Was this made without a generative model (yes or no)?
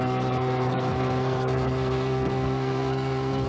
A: no